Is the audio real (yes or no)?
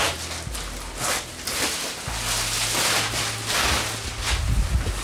yes